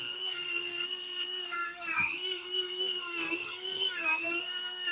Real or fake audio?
fake